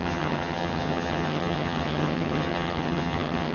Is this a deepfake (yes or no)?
yes